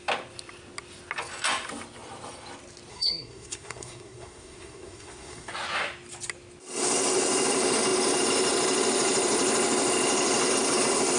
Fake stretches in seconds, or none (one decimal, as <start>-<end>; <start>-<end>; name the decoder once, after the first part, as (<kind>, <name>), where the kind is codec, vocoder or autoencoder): 2.9-5.5 (codec, SNAC)